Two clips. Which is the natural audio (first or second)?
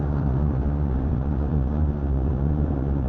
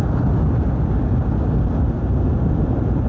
second